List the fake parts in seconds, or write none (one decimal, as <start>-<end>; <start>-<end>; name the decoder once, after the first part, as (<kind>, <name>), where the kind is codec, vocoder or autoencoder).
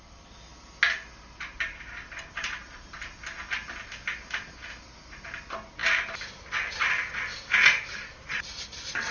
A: none